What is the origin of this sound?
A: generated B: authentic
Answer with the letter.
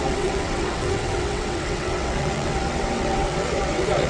A